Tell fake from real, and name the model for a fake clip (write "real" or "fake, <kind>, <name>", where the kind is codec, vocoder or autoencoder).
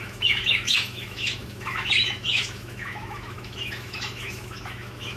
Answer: fake, autoencoder, DAC-VAE